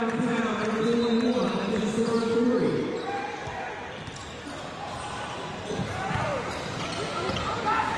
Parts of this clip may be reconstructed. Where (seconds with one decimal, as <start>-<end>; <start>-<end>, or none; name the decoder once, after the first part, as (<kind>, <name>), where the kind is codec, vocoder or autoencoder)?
none